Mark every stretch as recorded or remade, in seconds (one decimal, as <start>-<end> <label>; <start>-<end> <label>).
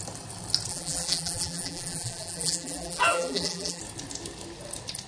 0.0-0.7 recorded; 0.7-3.8 remade; 3.8-5.1 recorded